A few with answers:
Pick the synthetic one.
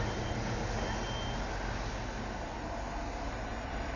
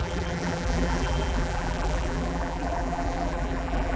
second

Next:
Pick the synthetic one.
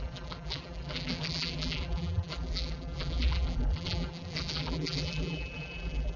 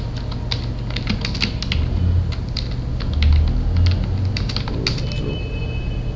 first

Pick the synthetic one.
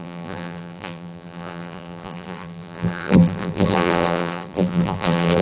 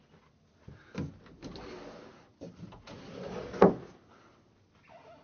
first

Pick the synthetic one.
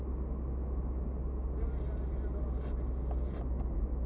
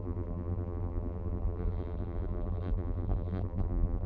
second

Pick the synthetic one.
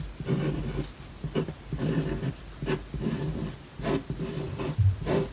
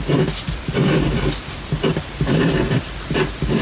second